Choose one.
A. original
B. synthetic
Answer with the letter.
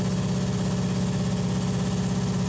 A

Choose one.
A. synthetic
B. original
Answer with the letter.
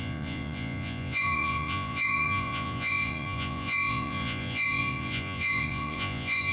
A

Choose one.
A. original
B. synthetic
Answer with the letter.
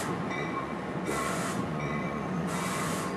B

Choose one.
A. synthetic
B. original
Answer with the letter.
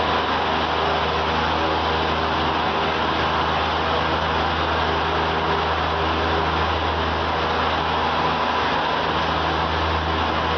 B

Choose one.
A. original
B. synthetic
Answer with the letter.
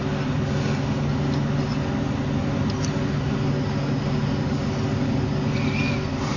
A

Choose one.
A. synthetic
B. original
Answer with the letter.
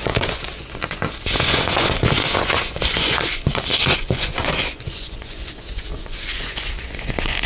A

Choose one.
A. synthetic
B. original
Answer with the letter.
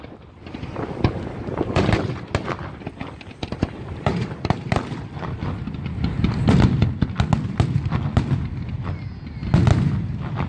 B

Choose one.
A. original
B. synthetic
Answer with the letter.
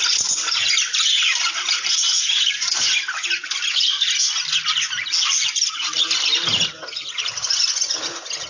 A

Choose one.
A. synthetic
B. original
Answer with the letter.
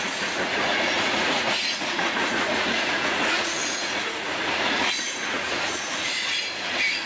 A